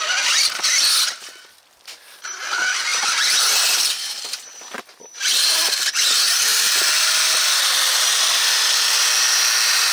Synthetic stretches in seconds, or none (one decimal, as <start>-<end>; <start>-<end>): 2.9-5.9

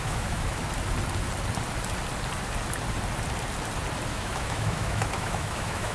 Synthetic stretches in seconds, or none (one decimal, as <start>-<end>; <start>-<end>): 0.0-0.6; 4.1-5.9

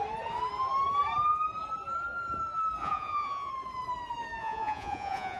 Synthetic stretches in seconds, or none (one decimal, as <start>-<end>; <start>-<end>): 2.8-3.5; 4.4-5.4

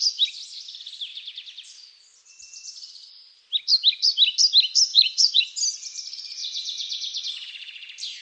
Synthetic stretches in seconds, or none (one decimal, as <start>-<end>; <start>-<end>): 4.9-5.4; 6.4-7.2